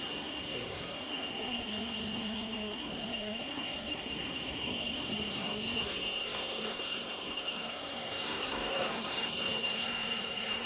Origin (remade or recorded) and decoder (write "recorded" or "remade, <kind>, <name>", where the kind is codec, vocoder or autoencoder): remade, codec, SNAC